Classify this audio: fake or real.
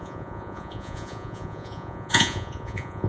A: fake